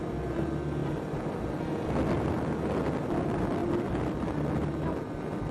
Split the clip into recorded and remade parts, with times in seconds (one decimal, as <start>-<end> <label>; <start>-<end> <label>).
0.0-0.8 recorded; 0.8-1.6 remade; 1.6-5.5 recorded